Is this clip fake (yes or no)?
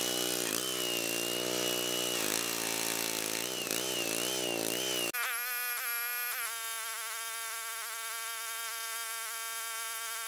no